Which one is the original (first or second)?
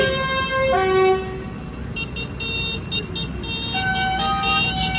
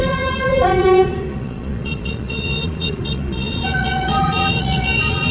first